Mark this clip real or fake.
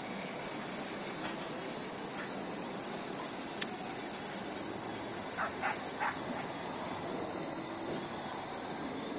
real